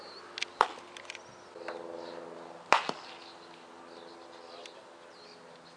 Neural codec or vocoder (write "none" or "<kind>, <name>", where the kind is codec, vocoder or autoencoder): none